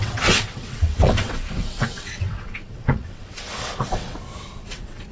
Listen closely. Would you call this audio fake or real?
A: fake